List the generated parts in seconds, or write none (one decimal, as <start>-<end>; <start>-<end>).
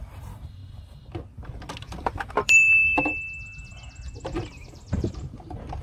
0.0-0.6; 2.3-3.1; 4.7-5.8